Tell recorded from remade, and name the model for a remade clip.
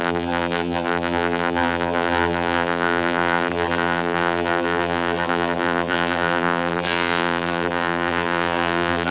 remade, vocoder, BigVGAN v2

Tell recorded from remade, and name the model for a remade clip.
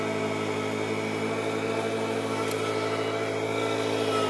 recorded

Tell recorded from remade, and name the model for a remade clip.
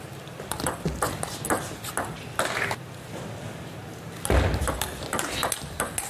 recorded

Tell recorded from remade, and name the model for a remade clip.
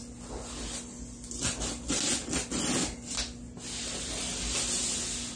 recorded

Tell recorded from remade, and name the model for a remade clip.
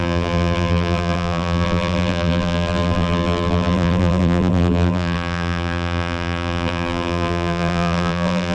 remade, vocoder, BigVGAN v2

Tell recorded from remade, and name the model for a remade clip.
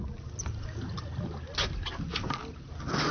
recorded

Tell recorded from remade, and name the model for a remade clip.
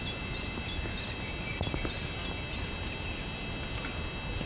remade, vocoder, BigVGAN v2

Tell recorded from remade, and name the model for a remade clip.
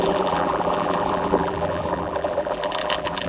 remade, vocoder, BigVGAN v2